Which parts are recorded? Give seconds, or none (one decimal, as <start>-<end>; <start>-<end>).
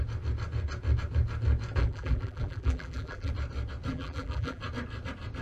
0.0-1.8; 3.3-3.9; 4.6-5.4